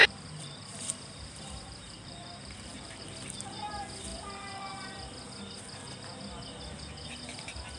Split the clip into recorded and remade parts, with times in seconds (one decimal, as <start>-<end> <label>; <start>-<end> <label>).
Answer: 0.0-3.0 remade; 3.0-7.8 recorded